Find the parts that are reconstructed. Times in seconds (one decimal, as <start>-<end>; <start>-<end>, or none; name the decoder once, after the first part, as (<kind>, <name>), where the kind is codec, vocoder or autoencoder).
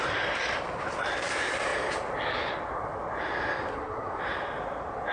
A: 3.7-4.2 (codec, SNAC)